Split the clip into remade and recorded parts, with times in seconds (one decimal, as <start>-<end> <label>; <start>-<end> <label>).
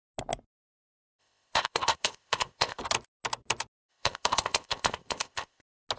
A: 0.0-1.2 recorded; 1.2-2.8 remade; 2.8-3.9 recorded; 3.9-5.6 remade; 5.6-6.0 recorded